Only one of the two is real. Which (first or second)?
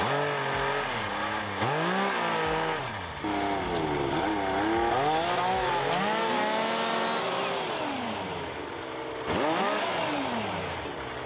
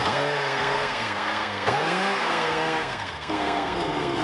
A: first